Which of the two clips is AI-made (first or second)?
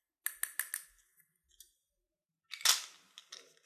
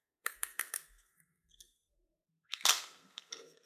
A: second